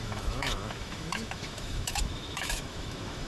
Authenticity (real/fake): fake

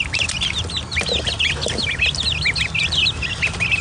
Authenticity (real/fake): real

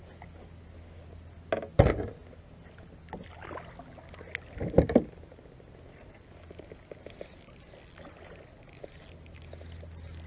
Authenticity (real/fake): real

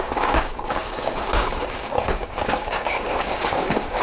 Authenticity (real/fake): fake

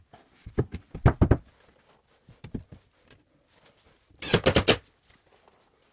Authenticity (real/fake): real